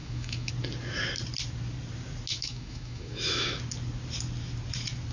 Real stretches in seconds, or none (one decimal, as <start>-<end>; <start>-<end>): 0.5-2.3; 3.6-5.1